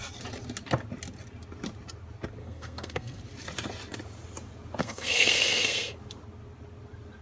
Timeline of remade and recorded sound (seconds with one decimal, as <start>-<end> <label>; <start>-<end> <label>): 0.0-2.4 recorded; 2.4-3.2 remade; 3.2-4.8 recorded; 4.8-5.9 remade; 5.9-7.2 recorded